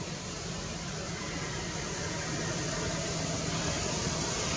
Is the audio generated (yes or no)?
no